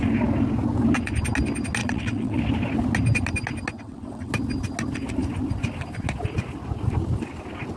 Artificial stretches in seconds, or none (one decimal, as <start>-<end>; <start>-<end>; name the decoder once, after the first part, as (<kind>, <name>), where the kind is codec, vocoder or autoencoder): 1.8-2.4 (vocoder, WaveNeXt); 3.7-4.3